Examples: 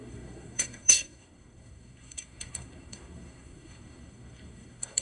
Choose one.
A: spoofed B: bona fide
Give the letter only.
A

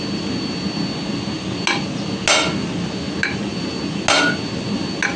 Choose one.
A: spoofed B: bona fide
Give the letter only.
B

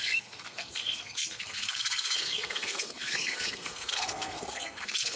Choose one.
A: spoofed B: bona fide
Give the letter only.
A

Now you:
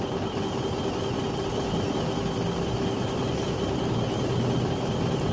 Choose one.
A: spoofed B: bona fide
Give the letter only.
B